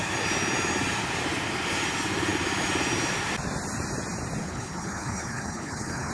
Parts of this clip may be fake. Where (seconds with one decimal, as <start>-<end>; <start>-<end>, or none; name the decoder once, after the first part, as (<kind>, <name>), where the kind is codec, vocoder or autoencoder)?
4.4-6.1 (codec, HILCodec)